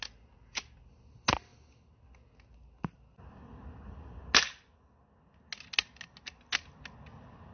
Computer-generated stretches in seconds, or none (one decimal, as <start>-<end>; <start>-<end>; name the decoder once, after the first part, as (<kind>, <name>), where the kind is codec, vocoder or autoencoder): none